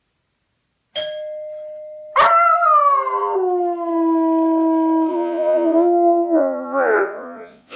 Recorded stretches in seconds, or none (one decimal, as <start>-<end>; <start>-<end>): 0.0-5.1